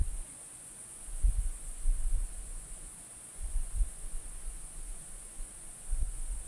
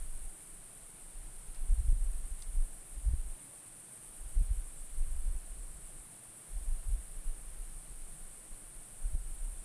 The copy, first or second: first